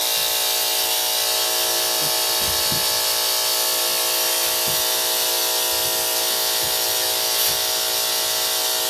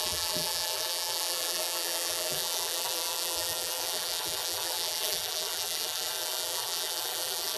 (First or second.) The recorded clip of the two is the first